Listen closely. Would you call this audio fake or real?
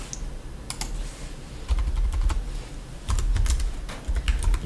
real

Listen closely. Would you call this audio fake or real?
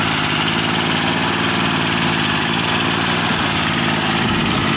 real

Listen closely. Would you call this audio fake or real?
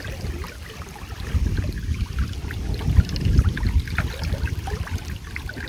real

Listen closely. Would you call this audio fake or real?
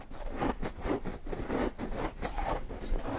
fake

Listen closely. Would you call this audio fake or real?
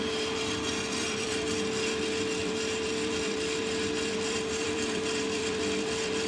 fake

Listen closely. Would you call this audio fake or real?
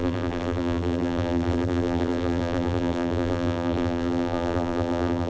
fake